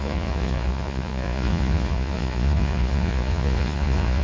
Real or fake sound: fake